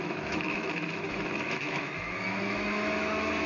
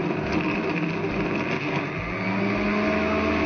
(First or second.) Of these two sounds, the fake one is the first